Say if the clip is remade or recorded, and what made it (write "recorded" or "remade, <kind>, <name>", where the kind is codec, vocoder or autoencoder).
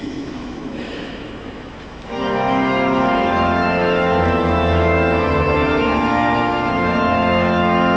remade, autoencoder, DAC-VAE